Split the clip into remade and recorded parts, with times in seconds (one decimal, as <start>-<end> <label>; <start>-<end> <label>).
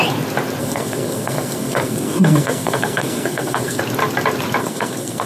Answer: 0.0-0.6 recorded; 0.6-3.8 remade; 3.8-4.6 recorded; 4.6-5.3 remade